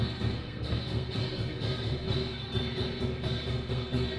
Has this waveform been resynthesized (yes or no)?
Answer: yes